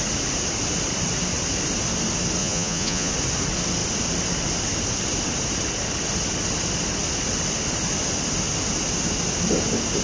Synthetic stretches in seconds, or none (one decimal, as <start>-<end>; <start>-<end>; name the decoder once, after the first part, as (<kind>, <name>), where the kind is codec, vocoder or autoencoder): 2.4-3.1 (vocoder, Vocos)